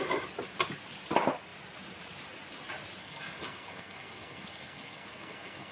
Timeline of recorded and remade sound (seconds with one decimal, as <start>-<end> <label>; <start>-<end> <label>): 0.0-3.0 recorded; 3.0-5.7 remade